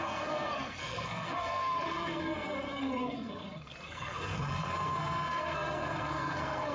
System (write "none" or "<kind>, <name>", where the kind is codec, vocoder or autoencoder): codec, SNAC